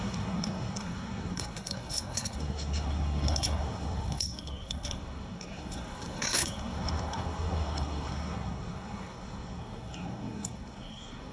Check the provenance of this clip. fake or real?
fake